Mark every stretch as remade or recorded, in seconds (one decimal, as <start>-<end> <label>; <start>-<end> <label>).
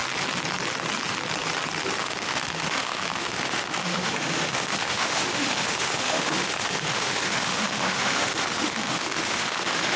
0.0-2.0 recorded; 2.0-10.0 remade